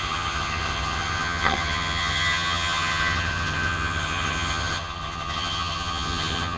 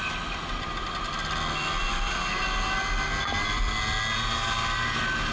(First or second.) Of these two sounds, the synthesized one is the first